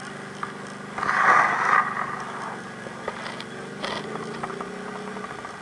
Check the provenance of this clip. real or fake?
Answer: real